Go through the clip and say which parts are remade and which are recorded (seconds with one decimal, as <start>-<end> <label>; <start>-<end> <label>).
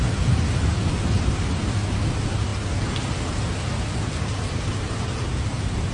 0.0-5.9 recorded